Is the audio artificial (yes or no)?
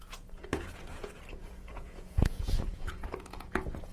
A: yes